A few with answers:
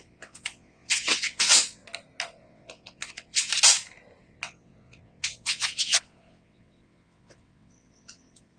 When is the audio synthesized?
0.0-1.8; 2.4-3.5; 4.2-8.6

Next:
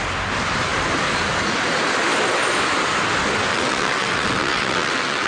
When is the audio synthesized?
3.5-5.3

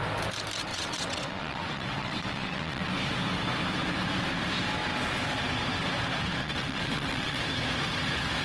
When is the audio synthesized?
0.7-2.9; 6.4-7.4

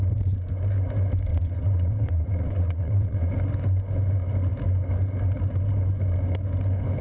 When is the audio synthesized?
1.3-3.3